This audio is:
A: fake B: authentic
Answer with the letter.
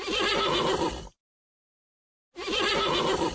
B